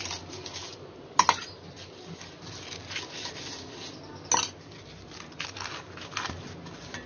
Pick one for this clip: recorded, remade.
recorded